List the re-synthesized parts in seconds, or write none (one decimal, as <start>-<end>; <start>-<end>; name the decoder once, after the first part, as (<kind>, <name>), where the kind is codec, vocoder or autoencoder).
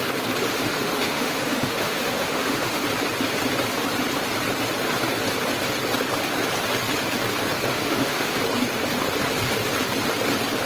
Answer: 0.5-2.8 (autoencoder, DAC-VAE); 7.7-8.4